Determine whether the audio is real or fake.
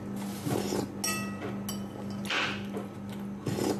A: real